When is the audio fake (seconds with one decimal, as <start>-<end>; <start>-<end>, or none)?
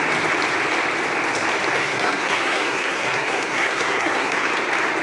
1.8-4.5